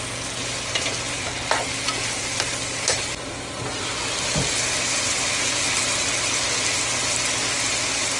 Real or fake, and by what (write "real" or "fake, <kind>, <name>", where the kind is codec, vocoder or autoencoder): real